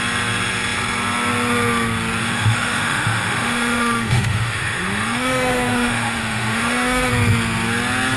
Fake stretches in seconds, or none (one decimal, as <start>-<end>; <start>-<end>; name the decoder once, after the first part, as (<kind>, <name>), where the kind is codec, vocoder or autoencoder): 2.2-7.1 (autoencoder, DAC-VAE)